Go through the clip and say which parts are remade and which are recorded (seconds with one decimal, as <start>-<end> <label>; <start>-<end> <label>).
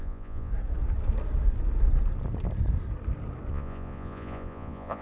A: 0.0-0.5 remade; 0.5-3.5 recorded; 3.5-5.0 remade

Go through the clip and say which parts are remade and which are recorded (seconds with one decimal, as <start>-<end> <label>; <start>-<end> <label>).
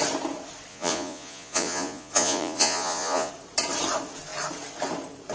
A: 0.0-0.7 recorded; 0.7-3.3 remade; 3.3-5.3 recorded